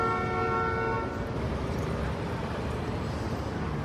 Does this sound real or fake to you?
real